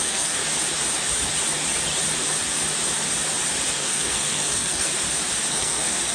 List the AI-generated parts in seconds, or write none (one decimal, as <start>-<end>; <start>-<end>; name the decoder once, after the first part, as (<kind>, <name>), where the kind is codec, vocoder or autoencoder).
0.0-0.4 (codec, SNAC); 3.7-4.9; 5.5-6.1